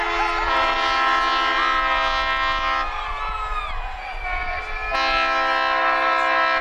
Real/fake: real